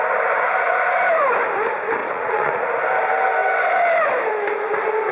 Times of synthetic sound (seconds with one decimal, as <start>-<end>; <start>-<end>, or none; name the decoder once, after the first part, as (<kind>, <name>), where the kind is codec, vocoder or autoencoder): 2.0-2.6 (vocoder, Vocos)